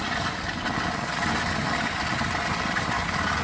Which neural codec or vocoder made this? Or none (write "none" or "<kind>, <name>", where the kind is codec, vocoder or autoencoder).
none